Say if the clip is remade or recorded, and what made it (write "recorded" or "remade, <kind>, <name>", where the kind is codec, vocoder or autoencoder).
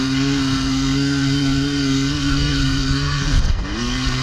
remade, codec, SNAC